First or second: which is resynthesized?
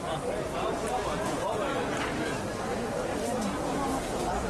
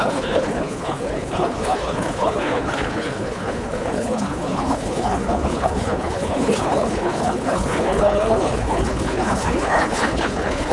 second